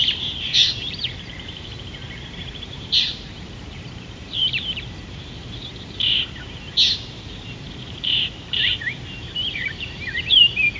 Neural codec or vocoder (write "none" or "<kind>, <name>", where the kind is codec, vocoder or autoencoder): vocoder, BigVGAN v2